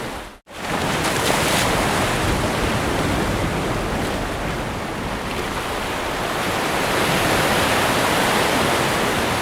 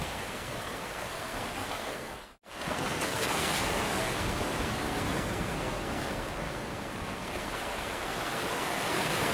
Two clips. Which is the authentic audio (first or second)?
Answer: first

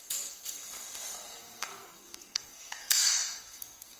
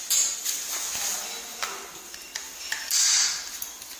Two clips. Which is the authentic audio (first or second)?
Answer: second